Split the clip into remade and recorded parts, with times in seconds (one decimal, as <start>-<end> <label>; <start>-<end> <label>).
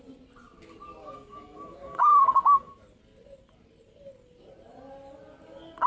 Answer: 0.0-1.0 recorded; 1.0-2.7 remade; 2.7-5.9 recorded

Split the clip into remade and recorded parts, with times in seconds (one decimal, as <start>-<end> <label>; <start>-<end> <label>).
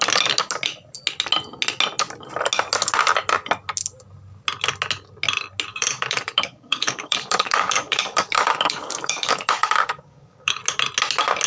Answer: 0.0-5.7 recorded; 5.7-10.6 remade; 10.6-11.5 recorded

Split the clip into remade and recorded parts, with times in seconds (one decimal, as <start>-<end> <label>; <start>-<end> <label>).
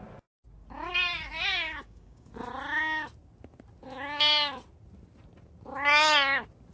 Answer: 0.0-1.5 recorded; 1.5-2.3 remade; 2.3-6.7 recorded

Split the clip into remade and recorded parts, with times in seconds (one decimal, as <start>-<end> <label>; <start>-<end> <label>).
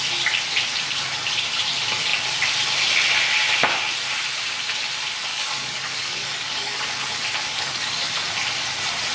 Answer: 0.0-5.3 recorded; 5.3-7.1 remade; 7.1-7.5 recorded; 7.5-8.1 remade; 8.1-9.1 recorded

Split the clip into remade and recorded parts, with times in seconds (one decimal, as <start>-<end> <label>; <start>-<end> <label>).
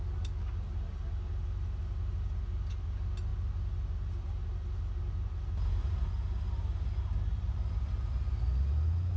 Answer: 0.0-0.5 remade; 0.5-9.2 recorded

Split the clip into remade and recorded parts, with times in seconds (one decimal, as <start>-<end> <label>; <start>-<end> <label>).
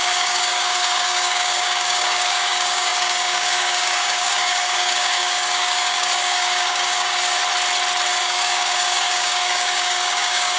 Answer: 0.0-7.4 remade; 7.4-8.2 recorded; 8.2-10.6 remade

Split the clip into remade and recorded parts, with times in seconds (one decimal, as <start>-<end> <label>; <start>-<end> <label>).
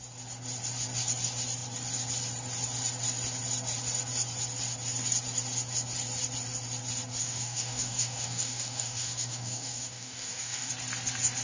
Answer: 0.0-7.2 recorded; 7.2-10.7 remade; 10.7-11.4 recorded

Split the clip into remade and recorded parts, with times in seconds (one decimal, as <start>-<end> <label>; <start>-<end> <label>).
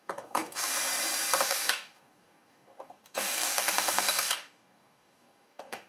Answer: 0.0-0.7 remade; 0.7-1.4 recorded; 1.4-5.9 remade